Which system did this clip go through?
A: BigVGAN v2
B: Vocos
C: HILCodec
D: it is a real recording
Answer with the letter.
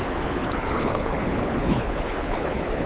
C